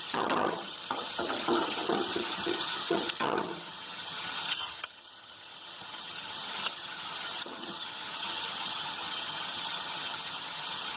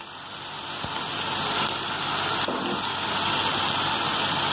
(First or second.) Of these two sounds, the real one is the second